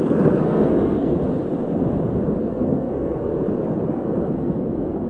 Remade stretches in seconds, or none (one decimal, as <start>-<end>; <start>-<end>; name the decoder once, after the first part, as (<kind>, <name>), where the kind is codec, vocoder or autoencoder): 0.0-1.2 (codec, SNAC); 2.4-3.3; 3.9-5.1